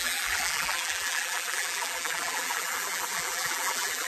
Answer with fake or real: fake